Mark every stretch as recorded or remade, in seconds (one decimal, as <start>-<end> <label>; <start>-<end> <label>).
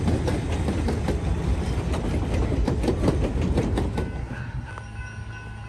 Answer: 0.0-4.2 recorded; 4.2-4.7 remade; 4.7-5.7 recorded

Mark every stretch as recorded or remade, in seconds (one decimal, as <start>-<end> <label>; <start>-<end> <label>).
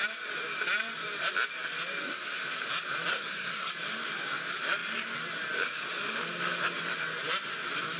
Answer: 0.0-3.1 recorded; 3.1-3.7 remade; 3.7-8.0 recorded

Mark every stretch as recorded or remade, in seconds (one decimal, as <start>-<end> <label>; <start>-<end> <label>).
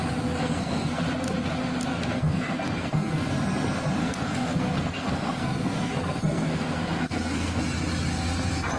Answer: 0.0-0.4 recorded; 0.4-1.0 remade; 1.0-1.9 recorded; 1.9-3.3 remade; 3.3-4.0 recorded; 4.0-7.6 remade; 7.6-8.8 recorded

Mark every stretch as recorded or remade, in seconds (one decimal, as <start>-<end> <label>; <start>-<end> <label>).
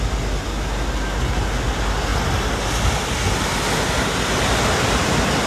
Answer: 0.0-5.5 recorded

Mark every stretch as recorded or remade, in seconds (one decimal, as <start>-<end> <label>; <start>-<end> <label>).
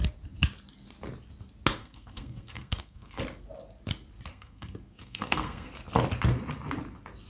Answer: 0.0-1.8 recorded; 1.8-3.2 remade; 3.2-4.3 recorded; 4.3-5.7 remade; 5.7-7.3 recorded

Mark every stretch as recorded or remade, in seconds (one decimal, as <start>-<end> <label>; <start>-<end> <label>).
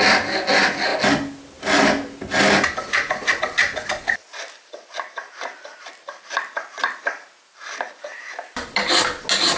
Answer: 0.0-9.6 recorded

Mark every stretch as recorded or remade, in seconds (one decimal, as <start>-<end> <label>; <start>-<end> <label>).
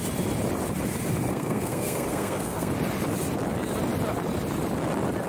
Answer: 0.0-1.3 recorded; 1.3-2.7 remade; 2.7-5.3 recorded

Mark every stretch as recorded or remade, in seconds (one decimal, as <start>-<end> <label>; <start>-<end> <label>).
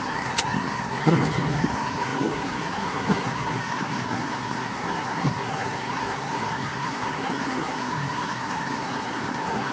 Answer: 0.0-9.7 remade